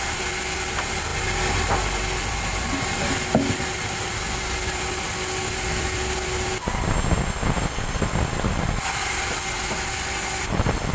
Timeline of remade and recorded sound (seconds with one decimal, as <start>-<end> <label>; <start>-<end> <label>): 0.0-10.9 recorded